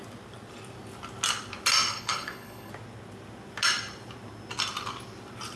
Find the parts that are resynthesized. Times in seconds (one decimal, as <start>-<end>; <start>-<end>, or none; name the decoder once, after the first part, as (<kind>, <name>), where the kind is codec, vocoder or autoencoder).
1.9-2.7 (codec, HILCodec)